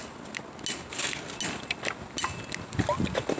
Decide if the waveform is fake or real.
real